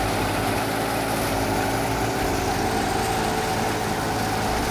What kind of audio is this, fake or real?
real